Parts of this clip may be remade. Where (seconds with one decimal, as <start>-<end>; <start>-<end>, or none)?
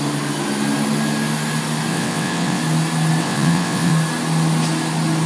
1.9-2.6; 3.2-3.9